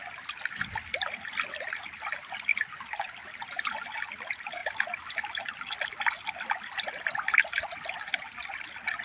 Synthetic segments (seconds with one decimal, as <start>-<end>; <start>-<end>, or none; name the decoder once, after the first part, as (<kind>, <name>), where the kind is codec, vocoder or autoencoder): 2.5-3.5 (vocoder, BigVGAN v2)